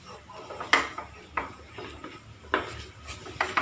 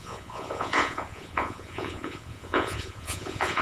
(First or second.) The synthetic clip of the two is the second